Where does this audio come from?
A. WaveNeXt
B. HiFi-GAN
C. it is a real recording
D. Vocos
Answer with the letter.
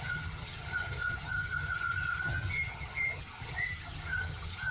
B